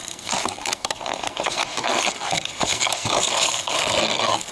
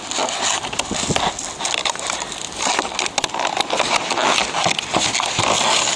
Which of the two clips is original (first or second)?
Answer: second